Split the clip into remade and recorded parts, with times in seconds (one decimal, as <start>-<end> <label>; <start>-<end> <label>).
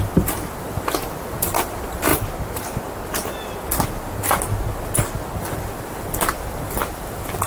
0.0-2.1 remade; 2.1-5.4 recorded; 5.4-7.5 remade